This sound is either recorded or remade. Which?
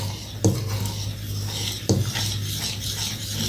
recorded